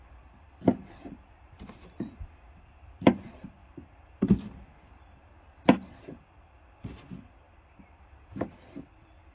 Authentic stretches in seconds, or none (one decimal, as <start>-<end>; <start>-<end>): 0.0-3.6; 4.6-9.3

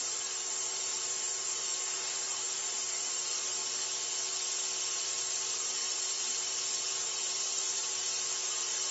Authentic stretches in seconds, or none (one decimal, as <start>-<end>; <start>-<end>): 3.6-5.2

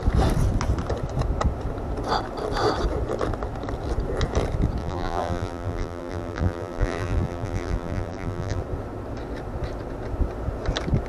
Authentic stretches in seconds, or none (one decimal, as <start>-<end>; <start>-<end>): 0.0-4.8; 8.6-11.1

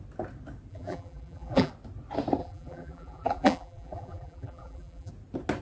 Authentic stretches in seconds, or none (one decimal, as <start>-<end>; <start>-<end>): 0.0-0.7; 1.7-2.4; 5.1-5.6

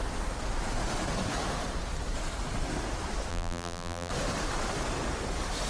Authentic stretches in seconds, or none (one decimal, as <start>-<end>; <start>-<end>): 0.0-3.3; 4.1-5.7